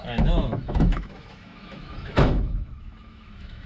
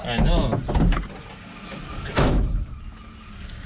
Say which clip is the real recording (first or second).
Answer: second